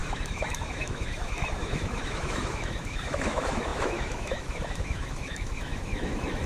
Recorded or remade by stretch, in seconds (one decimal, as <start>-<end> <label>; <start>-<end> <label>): 0.0-6.5 remade